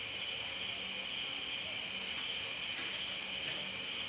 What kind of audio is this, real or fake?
real